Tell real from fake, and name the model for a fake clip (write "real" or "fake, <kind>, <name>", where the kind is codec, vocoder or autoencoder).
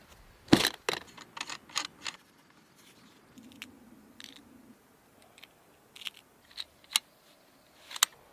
real